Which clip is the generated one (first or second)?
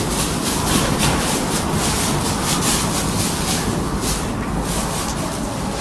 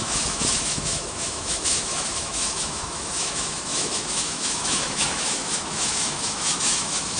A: second